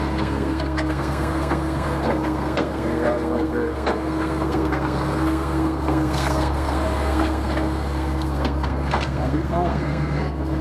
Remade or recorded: remade